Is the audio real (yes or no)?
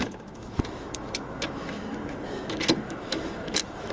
no